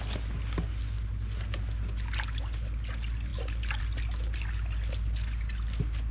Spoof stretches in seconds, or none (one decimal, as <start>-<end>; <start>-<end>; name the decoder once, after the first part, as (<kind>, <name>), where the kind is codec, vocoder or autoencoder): none